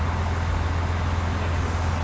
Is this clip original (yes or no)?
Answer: yes